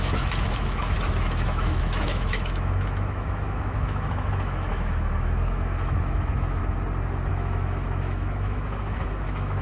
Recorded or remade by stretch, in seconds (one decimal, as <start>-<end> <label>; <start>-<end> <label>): 0.0-6.6 remade; 6.6-7.3 recorded; 7.3-9.6 remade